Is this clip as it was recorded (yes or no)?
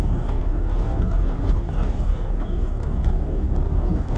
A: no